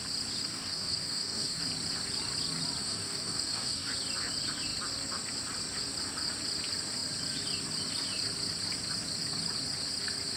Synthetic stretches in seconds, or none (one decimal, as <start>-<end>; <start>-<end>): 0.5-1.6; 2.8-3.9